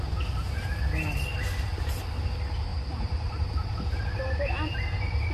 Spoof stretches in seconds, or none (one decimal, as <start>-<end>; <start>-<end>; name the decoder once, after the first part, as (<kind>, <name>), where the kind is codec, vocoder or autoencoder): 2.7-3.8 (vocoder, BigVGAN v2)